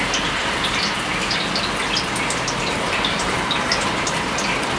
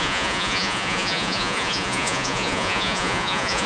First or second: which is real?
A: first